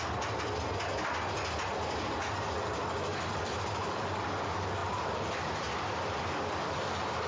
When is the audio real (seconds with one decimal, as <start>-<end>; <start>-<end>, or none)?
0.0-7.3